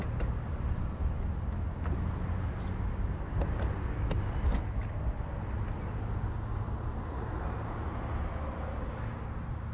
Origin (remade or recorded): recorded